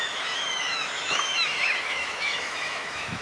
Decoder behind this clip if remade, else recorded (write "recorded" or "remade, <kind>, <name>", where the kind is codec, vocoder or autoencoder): remade, autoencoder, DAC-VAE